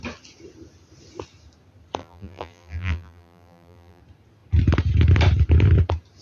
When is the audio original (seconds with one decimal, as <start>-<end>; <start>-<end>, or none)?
0.0-2.0; 4.0-6.2